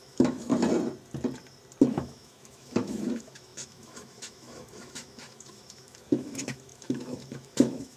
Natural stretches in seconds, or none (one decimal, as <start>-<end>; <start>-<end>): 0.5-1.9